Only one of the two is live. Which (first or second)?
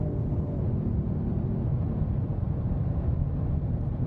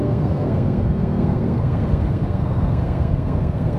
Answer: first